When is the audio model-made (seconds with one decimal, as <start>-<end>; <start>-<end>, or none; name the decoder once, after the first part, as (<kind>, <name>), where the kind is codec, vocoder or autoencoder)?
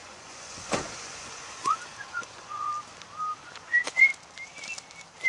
0.0-2.7 (vocoder, Vocos); 3.4-4.1